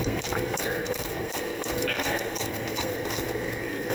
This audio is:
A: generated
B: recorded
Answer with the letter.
A